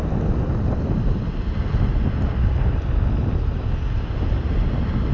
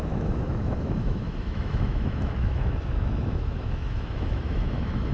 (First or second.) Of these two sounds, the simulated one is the second